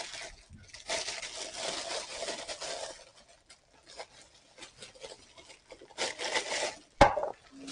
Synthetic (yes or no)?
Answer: no